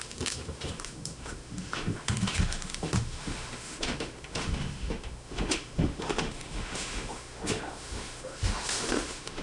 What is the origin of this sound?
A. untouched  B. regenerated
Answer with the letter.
B